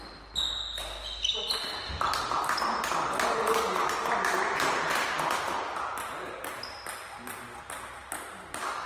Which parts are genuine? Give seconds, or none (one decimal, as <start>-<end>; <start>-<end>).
0.0-8.0

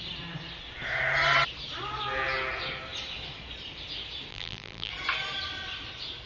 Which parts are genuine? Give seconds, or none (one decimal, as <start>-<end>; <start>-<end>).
0.0-4.3; 4.9-6.3

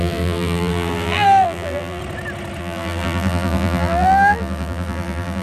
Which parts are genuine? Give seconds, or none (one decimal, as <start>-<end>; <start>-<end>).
2.0-2.6

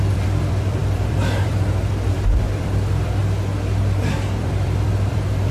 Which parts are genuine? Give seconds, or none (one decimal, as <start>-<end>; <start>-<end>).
3.2-4.4